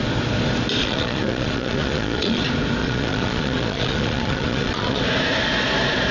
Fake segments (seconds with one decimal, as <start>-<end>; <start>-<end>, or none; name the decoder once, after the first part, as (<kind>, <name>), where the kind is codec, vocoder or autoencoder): 0.8-2.4 (vocoder, Vocos); 2.8-5.0